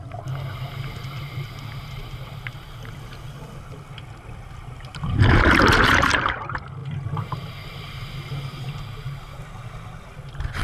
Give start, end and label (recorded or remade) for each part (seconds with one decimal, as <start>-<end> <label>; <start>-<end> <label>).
0.0-10.6 recorded